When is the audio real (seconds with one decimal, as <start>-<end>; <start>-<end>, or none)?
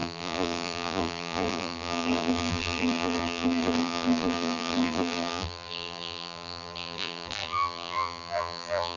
none